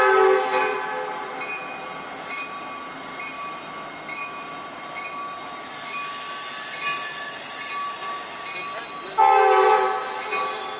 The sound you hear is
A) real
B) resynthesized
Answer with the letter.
A